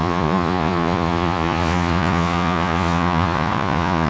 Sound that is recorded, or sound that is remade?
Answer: remade